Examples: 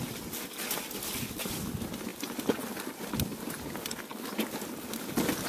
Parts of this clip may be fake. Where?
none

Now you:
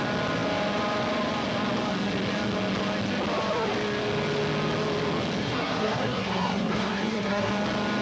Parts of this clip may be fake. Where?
5.4-7.5 (codec, SNAC)

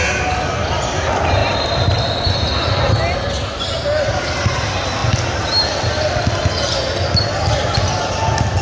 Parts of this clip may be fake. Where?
none

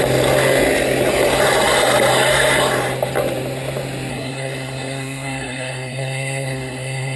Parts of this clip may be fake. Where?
4.1-7.2 (codec, SNAC)

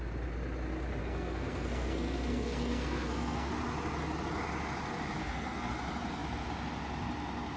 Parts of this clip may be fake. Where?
1.0-3.5 (codec, SNAC); 5.2-5.7

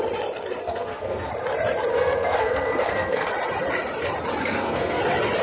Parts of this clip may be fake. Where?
0.6-1.3 (codec, SNAC); 1.9-3.3; 4.4-5.0

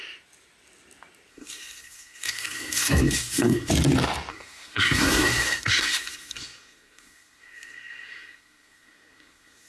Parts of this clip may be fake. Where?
1.3-3.7 (codec, SNAC); 4.3-9.7